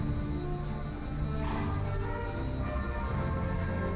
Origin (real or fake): real